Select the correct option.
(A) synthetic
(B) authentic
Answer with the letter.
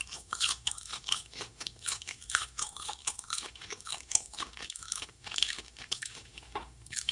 A